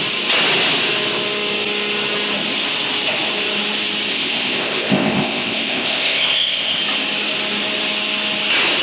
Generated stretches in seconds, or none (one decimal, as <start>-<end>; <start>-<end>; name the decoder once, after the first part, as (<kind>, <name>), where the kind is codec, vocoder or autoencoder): 4.1-6.8 (codec, ZipCodec)

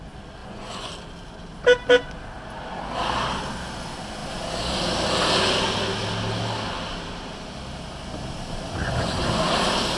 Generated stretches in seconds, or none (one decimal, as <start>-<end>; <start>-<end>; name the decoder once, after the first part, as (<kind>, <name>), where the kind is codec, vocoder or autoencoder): 0.4-0.9 (vocoder, Vocos); 8.8-9.5

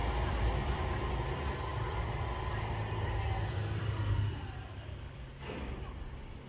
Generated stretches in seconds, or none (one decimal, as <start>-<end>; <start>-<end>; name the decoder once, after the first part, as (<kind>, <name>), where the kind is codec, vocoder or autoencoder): 0.0-1.1 (vocoder, BigVGAN v2); 1.7-5.4

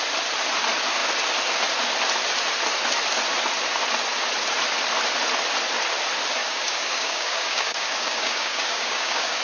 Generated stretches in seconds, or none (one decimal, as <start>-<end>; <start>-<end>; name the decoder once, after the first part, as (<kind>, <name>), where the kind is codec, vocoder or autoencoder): 6.4-9.4 (codec, DAC)

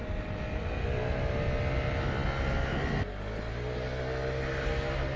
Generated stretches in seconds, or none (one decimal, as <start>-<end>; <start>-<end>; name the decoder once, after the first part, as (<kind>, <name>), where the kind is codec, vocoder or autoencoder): none